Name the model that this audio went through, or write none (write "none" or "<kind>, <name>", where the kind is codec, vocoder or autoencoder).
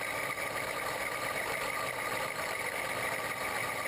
vocoder, BigVGAN v2